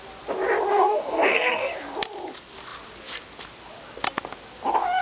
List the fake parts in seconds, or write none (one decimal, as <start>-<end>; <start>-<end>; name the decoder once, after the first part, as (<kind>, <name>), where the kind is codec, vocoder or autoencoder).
0.7-1.7 (codec, DAC)